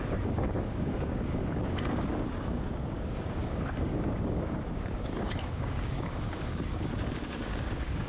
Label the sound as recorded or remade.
remade